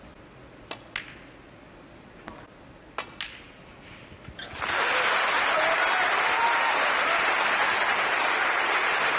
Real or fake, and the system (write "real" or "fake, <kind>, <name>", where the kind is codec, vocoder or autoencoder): real